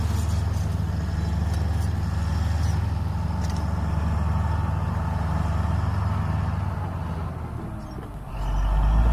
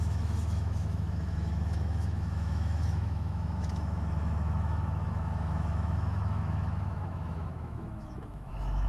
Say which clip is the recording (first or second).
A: first